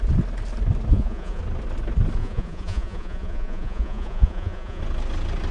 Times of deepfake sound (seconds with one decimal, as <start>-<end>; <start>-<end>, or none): 0.9-1.4; 2.2-4.8